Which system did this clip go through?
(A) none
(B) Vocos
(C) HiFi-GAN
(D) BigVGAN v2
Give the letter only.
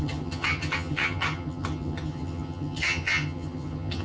C